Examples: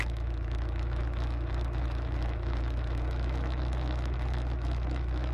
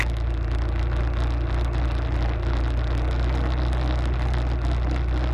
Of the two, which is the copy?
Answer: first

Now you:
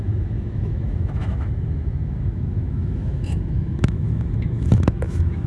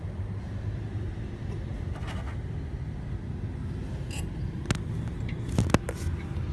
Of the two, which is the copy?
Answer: first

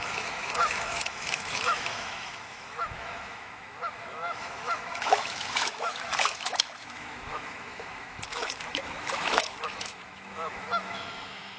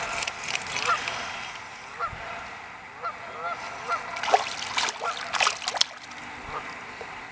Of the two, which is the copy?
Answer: first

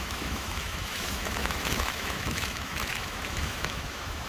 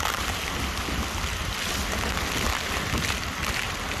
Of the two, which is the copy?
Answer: first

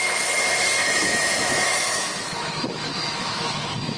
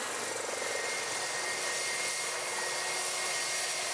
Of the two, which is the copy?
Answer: first